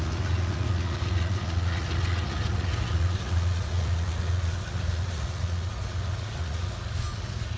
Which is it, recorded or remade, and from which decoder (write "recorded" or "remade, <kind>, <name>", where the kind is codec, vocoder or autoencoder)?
remade, vocoder, Vocos